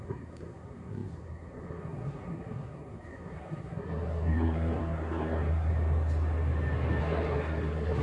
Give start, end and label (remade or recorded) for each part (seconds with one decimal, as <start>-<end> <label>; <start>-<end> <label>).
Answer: 0.0-5.7 remade; 5.7-7.0 recorded; 7.0-8.0 remade